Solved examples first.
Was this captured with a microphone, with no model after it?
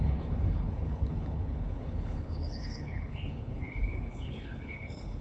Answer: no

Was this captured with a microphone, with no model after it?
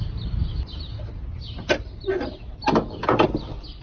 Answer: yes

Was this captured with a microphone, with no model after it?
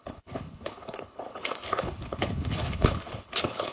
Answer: no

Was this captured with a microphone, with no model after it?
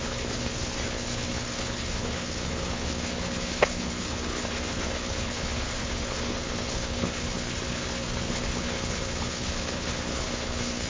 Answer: no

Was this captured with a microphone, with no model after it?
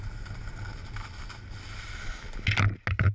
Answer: yes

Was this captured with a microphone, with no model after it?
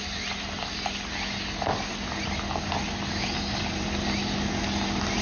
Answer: yes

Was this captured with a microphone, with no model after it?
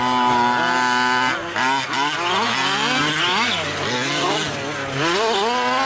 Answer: yes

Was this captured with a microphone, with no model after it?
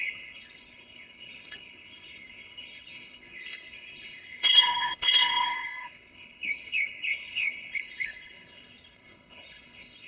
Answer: no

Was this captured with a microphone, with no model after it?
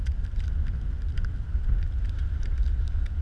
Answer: yes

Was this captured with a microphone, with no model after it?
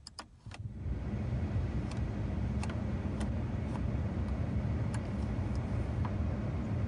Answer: yes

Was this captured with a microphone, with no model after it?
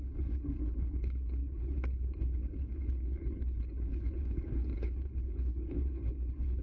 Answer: no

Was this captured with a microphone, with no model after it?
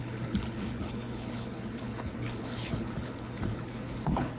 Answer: no